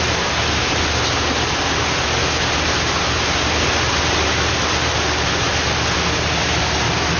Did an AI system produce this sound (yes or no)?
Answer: no